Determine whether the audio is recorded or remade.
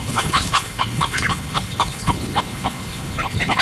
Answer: remade